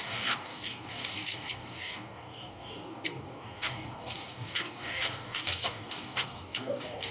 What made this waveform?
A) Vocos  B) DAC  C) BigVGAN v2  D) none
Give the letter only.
B